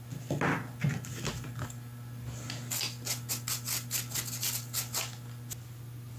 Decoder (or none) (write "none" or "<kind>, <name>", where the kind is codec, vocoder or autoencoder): none